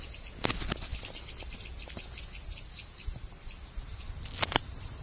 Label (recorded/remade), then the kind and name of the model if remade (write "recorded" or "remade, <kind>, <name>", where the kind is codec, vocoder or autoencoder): recorded